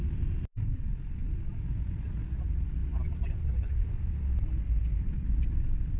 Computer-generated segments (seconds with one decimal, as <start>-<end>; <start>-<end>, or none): none